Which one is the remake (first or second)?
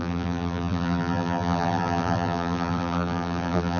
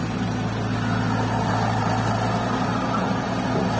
first